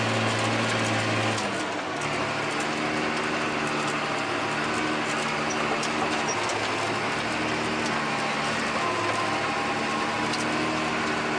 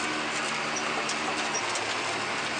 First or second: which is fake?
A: second